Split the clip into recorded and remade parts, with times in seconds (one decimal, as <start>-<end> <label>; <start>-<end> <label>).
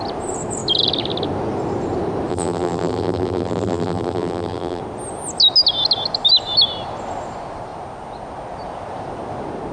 0.0-2.3 recorded; 2.3-4.8 remade; 4.8-9.7 recorded